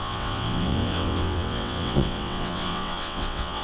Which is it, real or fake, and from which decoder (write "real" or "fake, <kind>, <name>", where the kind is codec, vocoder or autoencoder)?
fake, vocoder, WaveNeXt